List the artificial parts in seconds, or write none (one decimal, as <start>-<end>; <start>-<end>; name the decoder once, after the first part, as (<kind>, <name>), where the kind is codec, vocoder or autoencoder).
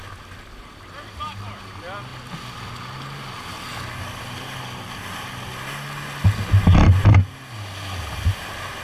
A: none